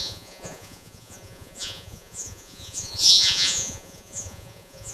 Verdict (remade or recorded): remade